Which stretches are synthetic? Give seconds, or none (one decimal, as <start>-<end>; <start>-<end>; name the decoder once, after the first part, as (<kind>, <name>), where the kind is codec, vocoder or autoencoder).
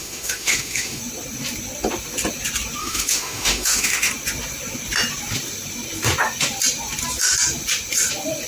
0.0-1.0 (autoencoder, DAC-VAE); 2.8-4.1